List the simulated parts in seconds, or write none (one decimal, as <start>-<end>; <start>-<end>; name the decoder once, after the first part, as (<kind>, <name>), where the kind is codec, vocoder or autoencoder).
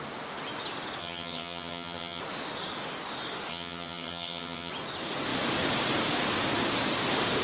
1.0-2.2 (vocoder, HiFi-GAN); 3.5-4.7